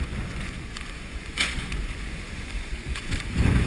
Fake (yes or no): yes